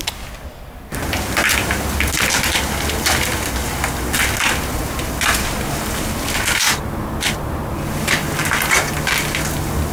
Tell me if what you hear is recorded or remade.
recorded